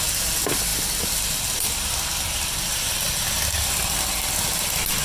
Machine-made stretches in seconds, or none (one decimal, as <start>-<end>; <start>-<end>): none